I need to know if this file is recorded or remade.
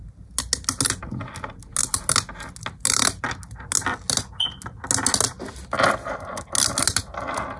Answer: recorded